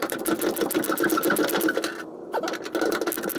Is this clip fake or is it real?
real